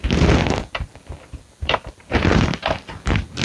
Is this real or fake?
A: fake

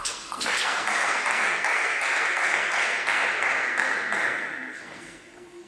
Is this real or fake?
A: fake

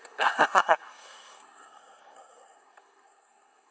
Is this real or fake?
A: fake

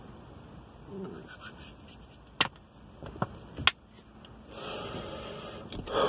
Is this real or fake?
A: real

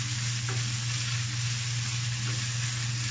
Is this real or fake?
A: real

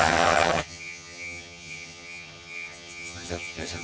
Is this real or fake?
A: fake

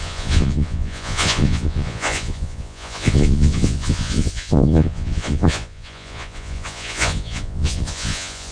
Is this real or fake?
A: fake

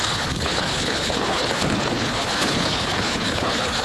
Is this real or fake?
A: fake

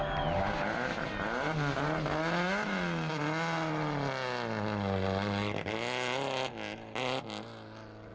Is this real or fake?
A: real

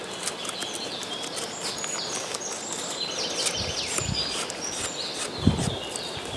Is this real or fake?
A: real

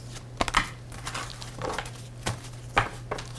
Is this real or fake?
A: real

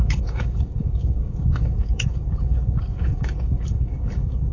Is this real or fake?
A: fake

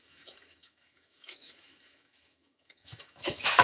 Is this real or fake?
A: fake